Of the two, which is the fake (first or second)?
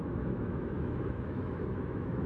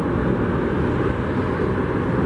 first